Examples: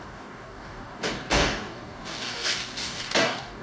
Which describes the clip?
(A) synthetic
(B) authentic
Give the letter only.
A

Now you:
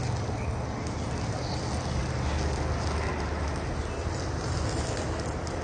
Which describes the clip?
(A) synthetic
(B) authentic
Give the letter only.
B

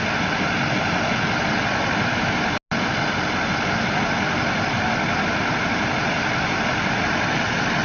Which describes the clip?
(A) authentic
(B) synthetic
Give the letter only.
A